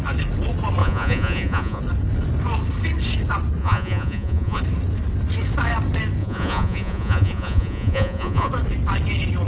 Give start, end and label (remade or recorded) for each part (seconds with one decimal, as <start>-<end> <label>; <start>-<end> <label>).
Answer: 0.0-0.8 recorded; 0.8-1.8 remade; 1.8-3.6 recorded; 3.6-4.6 remade; 4.6-6.2 recorded; 6.2-8.5 remade; 8.5-9.5 recorded